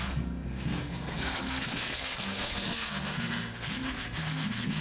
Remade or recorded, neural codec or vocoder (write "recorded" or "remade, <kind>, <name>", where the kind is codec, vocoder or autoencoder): remade, codec, SNAC